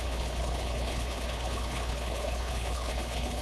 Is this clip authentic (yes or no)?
no